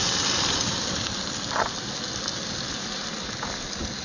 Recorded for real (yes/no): yes